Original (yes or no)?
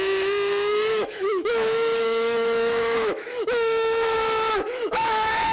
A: no